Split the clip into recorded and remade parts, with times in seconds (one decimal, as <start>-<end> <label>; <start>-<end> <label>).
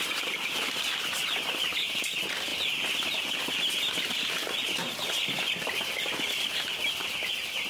0.0-7.7 recorded